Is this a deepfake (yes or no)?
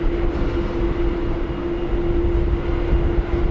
no